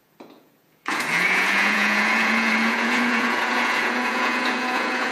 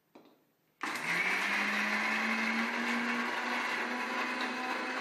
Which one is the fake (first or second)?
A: first